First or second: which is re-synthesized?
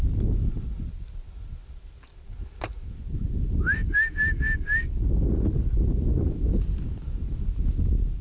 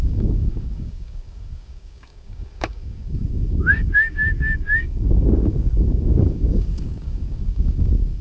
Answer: second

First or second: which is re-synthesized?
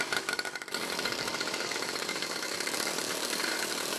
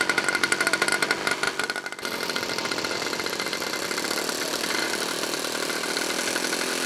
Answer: first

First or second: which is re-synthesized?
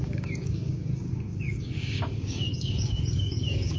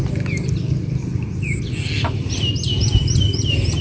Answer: first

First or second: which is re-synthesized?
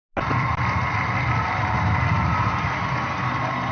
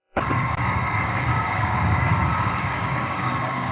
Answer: second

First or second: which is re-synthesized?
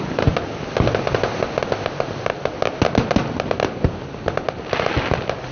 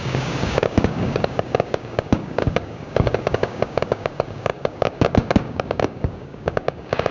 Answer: second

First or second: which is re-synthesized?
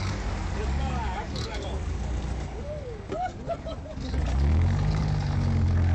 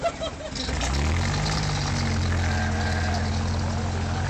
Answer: first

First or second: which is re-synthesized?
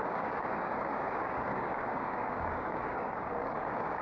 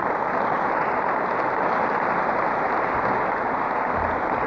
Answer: first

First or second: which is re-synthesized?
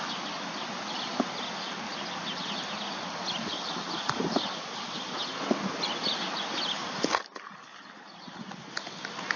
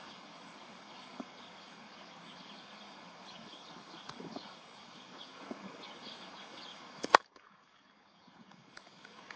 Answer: second